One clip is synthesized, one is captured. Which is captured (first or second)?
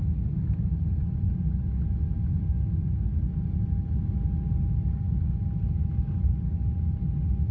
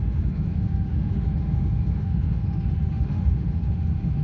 first